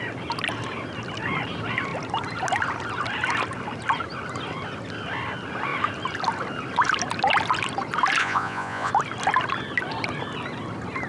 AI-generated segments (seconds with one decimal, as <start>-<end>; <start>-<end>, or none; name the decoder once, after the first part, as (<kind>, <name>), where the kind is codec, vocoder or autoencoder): 8.2-8.9 (vocoder, Vocos)